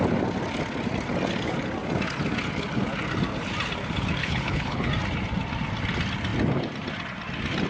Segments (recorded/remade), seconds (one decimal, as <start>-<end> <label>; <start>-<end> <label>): 0.0-4.2 recorded; 4.2-4.9 remade; 4.9-7.7 recorded